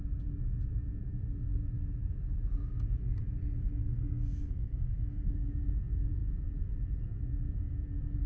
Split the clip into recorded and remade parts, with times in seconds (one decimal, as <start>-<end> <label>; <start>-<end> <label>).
0.0-3.8 recorded; 3.8-5.6 remade; 5.6-8.3 recorded